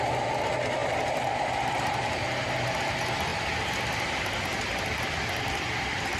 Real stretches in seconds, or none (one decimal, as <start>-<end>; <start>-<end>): 0.0-6.2